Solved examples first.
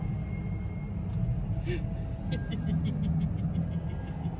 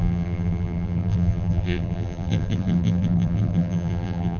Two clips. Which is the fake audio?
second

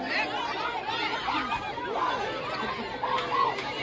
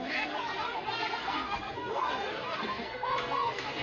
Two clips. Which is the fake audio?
second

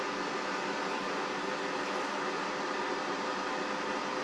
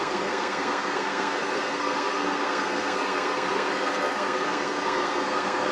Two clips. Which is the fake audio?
second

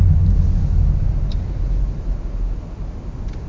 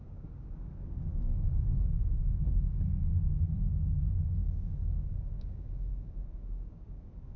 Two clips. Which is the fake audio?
second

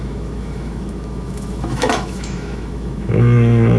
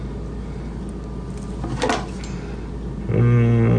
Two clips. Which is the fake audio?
first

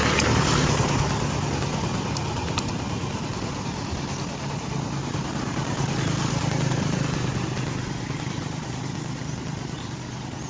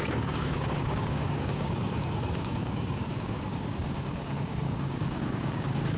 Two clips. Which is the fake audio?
second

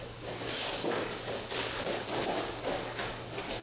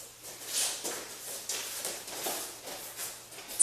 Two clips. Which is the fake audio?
first